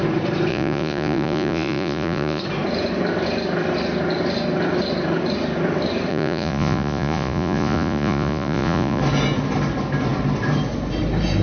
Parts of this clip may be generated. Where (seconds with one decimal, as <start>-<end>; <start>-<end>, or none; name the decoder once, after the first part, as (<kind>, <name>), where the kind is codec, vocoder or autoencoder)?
0.5-2.4 (vocoder, Vocos); 6.1-9.0